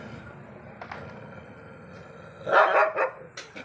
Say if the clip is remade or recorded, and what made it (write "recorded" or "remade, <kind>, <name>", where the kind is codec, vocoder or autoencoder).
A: recorded